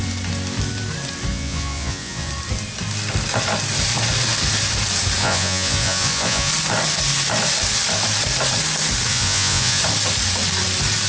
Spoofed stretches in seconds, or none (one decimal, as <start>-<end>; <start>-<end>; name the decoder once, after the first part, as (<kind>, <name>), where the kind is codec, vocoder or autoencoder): 1.3-2.3 (vocoder, Vocos); 5.2-6.5; 9.1-9.8